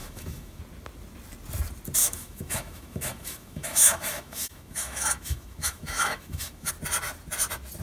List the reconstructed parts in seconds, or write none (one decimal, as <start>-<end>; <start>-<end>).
0.0-0.6; 2.0-6.7